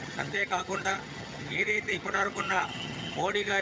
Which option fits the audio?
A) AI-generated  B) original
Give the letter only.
A